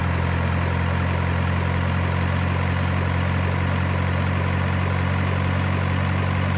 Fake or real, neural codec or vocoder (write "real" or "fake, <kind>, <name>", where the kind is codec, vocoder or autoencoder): real